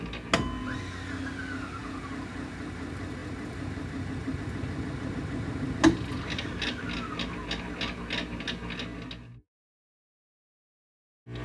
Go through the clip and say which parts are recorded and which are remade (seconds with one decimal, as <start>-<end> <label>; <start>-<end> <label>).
0.0-11.4 recorded